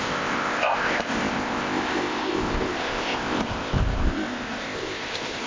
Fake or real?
fake